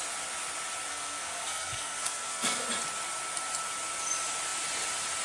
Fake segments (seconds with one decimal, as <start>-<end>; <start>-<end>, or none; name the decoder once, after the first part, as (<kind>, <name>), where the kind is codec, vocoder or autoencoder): 0.9-2.6 (codec, SNAC)